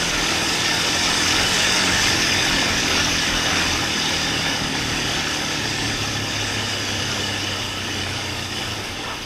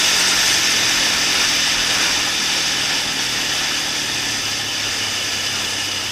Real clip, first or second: second